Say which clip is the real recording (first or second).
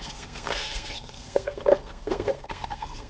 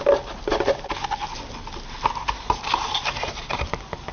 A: second